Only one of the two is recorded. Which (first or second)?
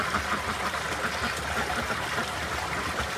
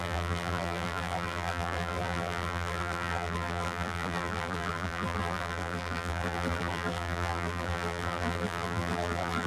first